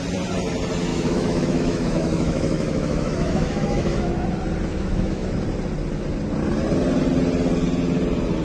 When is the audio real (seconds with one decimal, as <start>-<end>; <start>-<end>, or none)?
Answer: 0.0-0.9; 4.1-4.7; 5.4-8.4